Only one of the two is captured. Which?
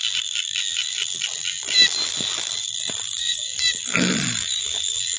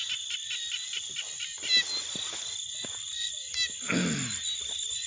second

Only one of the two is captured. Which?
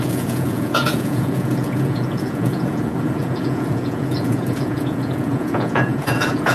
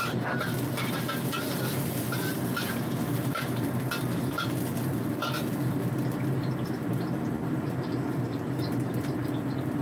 second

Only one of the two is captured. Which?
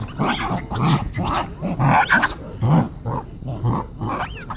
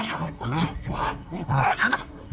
first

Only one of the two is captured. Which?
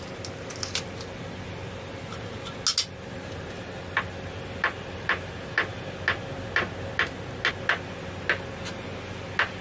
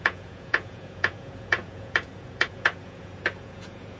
first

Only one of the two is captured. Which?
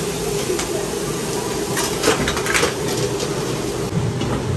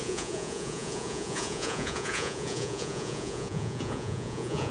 first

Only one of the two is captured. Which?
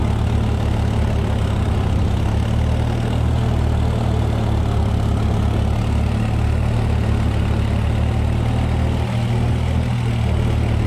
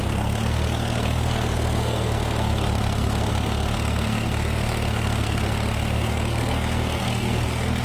first